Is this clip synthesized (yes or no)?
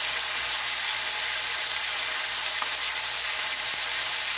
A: no